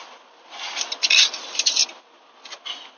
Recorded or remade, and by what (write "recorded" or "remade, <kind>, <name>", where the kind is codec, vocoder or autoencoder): recorded